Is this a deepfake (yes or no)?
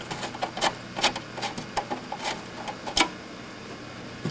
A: no